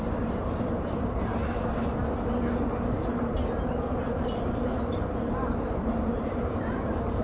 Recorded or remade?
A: remade